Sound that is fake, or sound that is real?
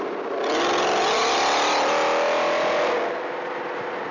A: real